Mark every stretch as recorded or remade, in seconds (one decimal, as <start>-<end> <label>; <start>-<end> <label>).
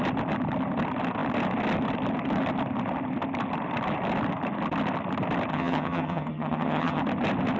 0.0-5.5 recorded; 5.5-7.0 remade; 7.0-7.6 recorded